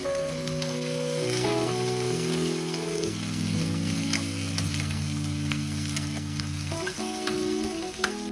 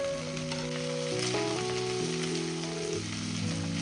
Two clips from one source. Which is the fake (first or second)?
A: first